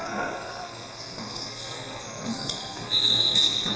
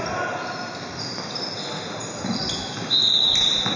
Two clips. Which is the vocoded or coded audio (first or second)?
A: first